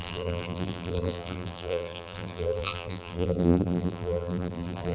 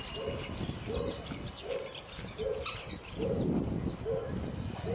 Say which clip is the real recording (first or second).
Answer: second